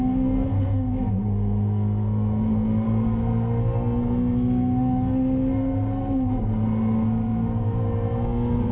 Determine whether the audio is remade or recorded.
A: remade